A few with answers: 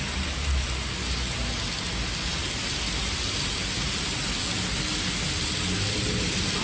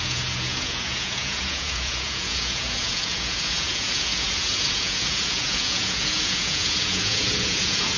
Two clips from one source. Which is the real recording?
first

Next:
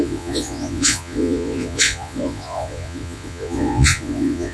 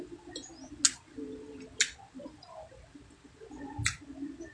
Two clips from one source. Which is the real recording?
second